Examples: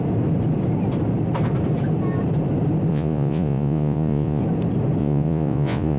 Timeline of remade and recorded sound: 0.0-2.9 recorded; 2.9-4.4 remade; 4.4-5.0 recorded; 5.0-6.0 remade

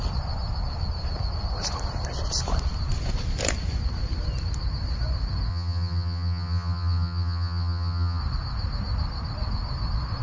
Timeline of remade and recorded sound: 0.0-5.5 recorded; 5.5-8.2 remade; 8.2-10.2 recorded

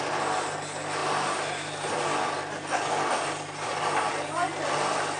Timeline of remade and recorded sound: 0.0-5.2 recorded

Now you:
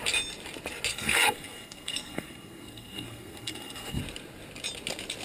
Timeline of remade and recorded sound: 0.0-0.9 recorded; 0.9-4.0 remade; 4.0-5.2 recorded